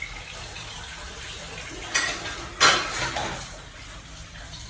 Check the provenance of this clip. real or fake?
real